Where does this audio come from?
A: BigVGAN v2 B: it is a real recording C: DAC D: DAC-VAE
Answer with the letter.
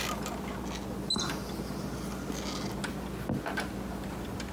B